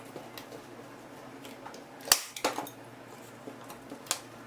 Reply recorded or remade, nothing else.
recorded